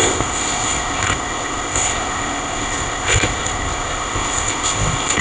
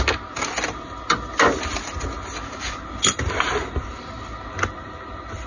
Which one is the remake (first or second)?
first